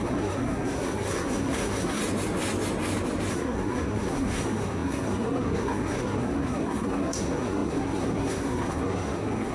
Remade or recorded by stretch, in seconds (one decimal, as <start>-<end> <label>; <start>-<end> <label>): 0.0-2.0 remade; 2.0-3.3 recorded; 3.3-9.5 remade